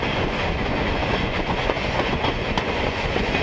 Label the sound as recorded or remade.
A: remade